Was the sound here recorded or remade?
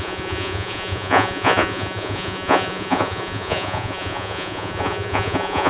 remade